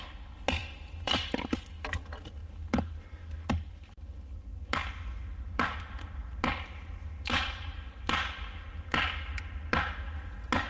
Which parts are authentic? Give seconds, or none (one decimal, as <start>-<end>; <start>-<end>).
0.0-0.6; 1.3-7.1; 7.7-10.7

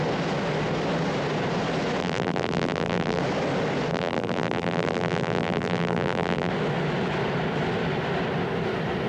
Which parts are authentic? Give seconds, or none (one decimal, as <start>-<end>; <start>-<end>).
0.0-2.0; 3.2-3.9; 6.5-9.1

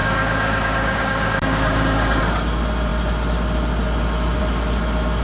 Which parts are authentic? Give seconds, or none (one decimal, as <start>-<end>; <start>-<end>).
2.2-5.2

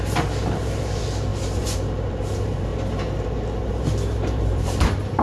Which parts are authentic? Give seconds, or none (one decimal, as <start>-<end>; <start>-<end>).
2.7-3.2

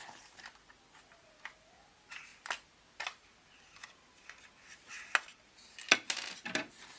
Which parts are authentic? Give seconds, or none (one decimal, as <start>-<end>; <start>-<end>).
0.0-7.0

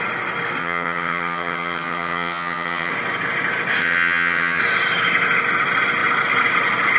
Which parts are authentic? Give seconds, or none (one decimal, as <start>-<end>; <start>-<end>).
0.0-0.6; 2.9-3.8; 4.6-7.0

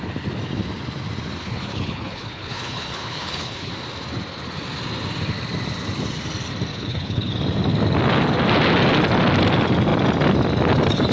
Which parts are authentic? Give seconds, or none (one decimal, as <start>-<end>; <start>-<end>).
0.0-1.4; 3.7-6.7; 7.3-11.1

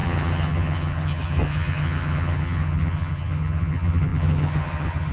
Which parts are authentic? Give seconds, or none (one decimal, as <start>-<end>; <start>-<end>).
none